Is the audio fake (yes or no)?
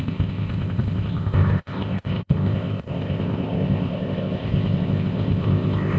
yes